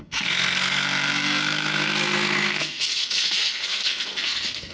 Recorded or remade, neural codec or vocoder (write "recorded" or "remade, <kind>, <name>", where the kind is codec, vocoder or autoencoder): remade, codec, SNAC